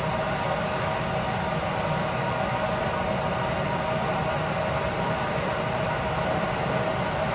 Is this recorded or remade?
recorded